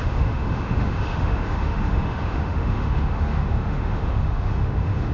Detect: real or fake fake